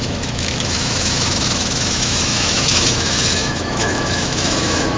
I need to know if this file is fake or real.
fake